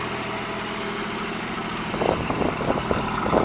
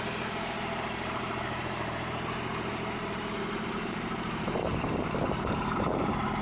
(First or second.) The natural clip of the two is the first